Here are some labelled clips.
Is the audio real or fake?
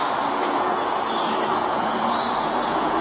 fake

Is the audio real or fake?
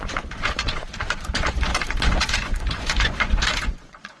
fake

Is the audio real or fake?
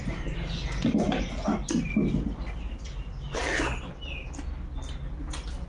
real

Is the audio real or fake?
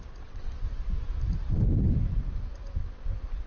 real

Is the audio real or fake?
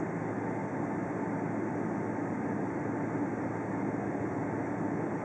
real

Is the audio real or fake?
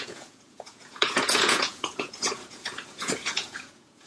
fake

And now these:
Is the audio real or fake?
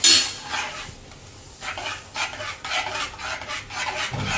real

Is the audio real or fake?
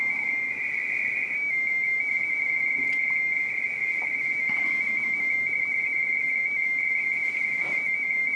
real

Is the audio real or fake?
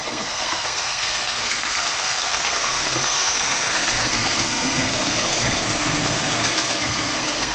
fake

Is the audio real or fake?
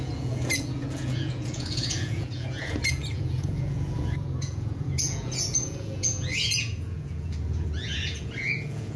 fake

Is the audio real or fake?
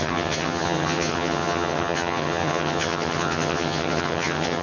fake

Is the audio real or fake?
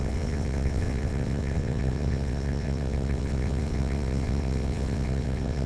fake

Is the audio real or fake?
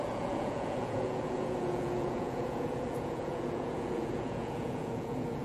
fake